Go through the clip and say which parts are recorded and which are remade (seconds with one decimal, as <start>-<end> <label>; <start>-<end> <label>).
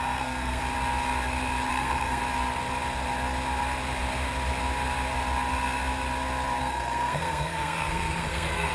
0.0-0.6 remade; 0.6-1.7 recorded; 1.7-2.2 remade; 2.2-6.6 recorded; 6.6-8.7 remade